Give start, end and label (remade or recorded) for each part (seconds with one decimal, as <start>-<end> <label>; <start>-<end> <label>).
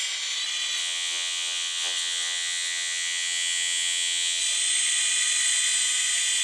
0.0-0.8 recorded; 0.8-4.4 remade; 4.4-6.4 recorded